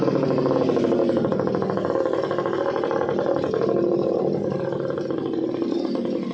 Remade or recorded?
recorded